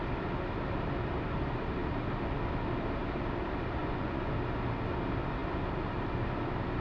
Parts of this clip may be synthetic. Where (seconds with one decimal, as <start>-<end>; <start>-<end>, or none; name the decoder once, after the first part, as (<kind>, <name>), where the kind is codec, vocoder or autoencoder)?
3.8-4.3 (vocoder, Vocos)